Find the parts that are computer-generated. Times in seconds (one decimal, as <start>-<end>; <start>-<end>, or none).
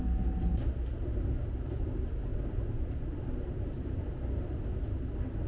2.3-4.1